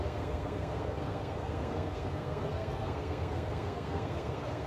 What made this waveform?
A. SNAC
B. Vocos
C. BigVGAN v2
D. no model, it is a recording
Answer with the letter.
A